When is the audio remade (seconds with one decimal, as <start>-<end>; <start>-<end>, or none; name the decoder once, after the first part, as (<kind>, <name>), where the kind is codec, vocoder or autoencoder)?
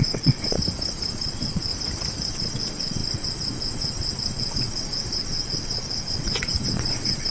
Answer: 0.0-0.6 (vocoder, Vocos); 1.1-1.7; 2.3-7.3